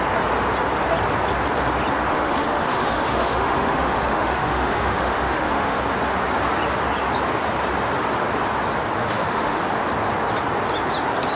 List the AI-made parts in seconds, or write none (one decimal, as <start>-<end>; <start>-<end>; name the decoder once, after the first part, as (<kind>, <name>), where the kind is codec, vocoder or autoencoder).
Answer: 2.1-5.8 (autoencoder, DAC-VAE); 9.0-9.6